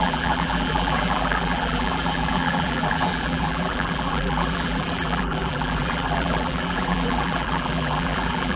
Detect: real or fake fake